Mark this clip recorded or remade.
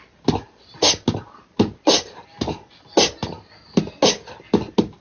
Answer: recorded